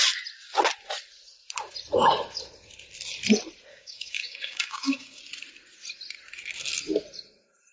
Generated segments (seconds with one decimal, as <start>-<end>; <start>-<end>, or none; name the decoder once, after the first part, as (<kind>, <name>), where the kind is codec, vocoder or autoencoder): 3.7-5.2 (codec, DAC)